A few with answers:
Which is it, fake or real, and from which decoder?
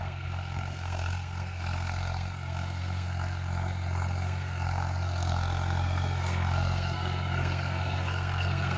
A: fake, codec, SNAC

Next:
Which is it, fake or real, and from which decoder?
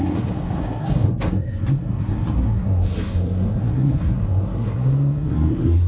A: fake, codec, SNAC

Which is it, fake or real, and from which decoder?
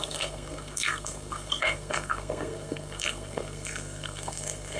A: fake, codec, SNAC